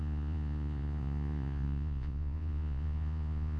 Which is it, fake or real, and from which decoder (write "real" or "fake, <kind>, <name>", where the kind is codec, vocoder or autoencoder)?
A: fake, vocoder, Vocos